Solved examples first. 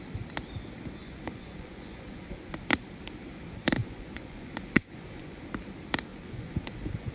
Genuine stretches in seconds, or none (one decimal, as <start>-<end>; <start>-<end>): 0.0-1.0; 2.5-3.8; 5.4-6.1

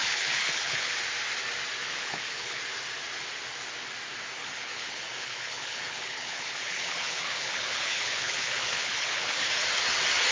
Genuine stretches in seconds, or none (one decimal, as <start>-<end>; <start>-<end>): 0.9-1.8; 2.6-4.4; 9.5-10.3

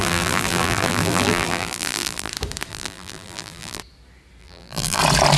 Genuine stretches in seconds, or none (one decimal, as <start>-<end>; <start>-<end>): 2.3-2.7; 3.8-4.4; 5.0-5.4

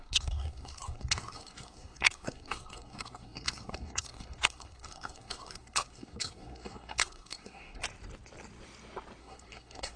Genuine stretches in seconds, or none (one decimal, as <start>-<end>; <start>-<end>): 7.8-9.2

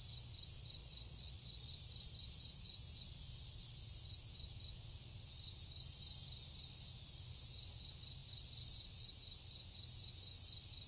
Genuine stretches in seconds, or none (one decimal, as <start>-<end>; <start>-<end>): 0.0-0.8; 1.7-10.9